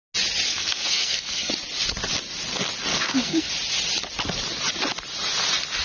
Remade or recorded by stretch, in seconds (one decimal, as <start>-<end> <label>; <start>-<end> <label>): 0.0-0.5 recorded; 0.5-1.5 remade; 1.5-2.9 recorded; 2.9-3.5 remade; 3.5-5.8 recorded